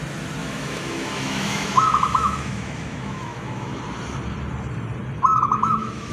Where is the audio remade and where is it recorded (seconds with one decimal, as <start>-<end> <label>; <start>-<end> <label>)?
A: 0.0-0.4 recorded; 0.4-3.8 remade; 3.8-5.3 recorded; 5.3-6.1 remade